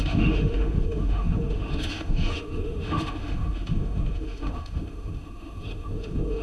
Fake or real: fake